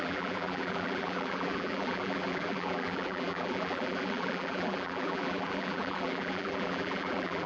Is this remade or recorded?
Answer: remade